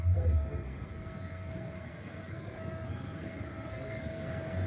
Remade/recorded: remade